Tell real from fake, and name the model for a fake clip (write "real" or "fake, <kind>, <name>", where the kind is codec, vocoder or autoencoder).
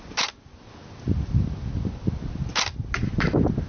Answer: real